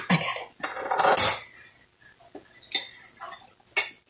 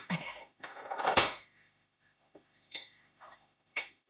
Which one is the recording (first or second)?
first